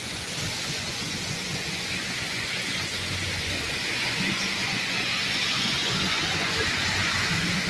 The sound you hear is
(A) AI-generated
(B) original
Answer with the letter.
A